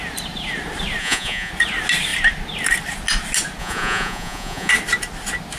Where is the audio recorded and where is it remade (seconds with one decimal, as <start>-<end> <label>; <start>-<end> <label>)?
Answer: 0.0-1.0 recorded; 1.0-1.5 remade; 1.5-3.6 recorded; 3.6-4.7 remade; 4.7-5.6 recorded